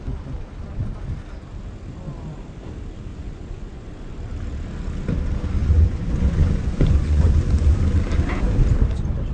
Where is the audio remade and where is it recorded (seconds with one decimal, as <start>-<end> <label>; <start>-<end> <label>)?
0.0-3.1 recorded; 3.1-4.1 remade; 4.1-5.6 recorded; 5.6-7.4 remade; 7.4-9.3 recorded